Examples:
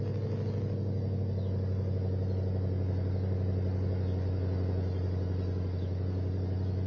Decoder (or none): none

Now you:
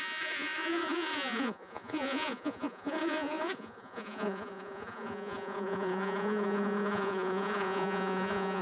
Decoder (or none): vocoder, Vocos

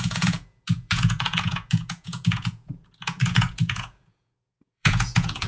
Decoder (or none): vocoder, Vocos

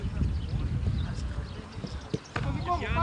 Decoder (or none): none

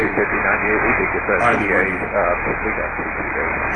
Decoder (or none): none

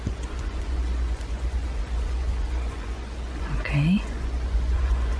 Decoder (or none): vocoder, Vocos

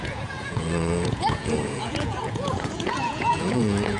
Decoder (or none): vocoder, Vocos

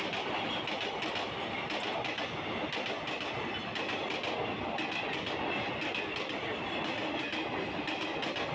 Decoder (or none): none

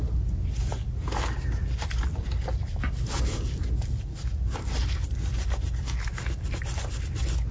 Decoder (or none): none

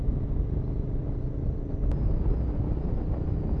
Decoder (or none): none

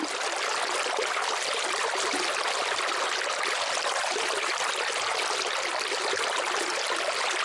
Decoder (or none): none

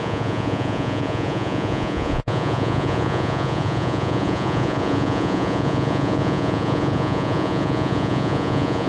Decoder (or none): vocoder, Vocos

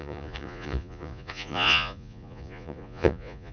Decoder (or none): vocoder, Vocos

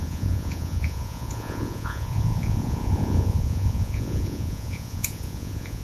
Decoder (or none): vocoder, Vocos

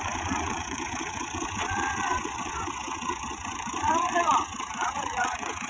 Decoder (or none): vocoder, Vocos